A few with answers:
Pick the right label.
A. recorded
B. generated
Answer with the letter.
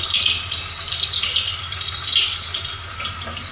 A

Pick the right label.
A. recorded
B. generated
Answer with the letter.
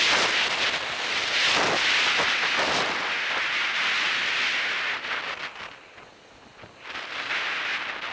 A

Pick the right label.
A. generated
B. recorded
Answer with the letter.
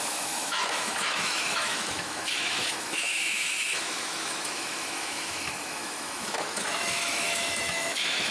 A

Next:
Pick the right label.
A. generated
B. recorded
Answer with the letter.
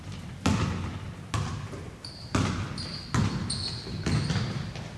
B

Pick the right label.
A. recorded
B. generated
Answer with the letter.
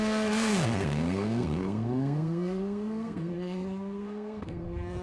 B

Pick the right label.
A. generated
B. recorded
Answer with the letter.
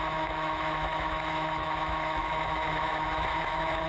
A